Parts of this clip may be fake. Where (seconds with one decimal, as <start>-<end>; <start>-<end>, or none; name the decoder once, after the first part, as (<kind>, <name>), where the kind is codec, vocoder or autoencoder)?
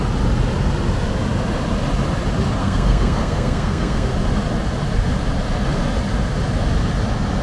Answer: 2.6-4.1 (codec, SNAC)